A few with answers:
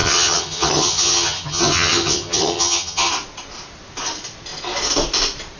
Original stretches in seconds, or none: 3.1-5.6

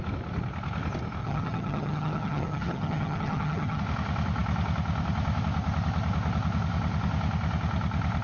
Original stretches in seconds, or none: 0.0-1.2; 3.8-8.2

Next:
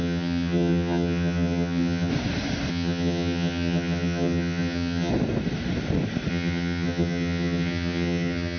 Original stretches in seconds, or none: 2.1-2.7; 5.1-6.3

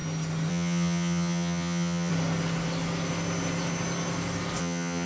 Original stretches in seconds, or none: 0.0-0.5; 2.1-4.6

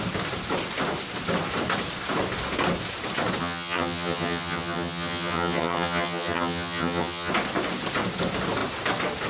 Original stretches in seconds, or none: 0.0-3.4; 7.3-9.3

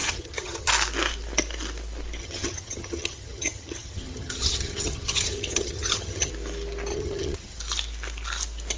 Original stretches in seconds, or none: 0.7-2.2; 6.3-6.9; 7.6-8.8

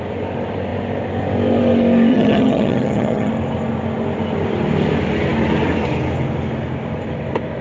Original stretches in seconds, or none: 0.0-2.1; 3.3-7.6

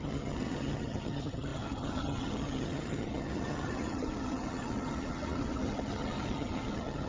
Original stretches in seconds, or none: none